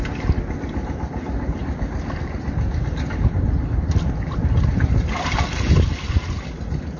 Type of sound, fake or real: real